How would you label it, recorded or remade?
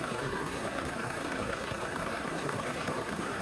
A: remade